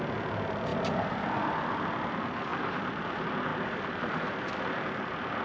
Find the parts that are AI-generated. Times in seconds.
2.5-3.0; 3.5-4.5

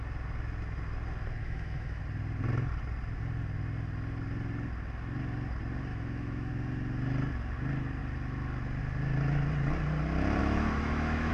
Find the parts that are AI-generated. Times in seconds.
1.4-2.0; 5.9-6.5; 10.4-11.3